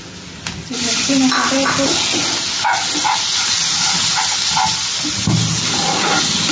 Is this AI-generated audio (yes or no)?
no